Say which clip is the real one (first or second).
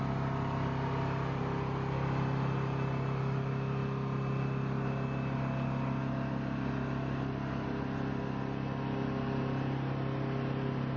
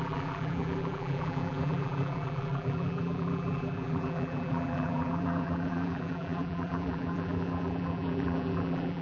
first